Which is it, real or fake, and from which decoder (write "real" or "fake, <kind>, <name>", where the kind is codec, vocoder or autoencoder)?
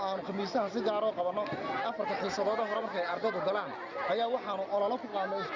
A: real